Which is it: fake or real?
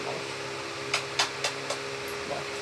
real